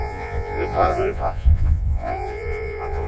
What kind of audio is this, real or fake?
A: fake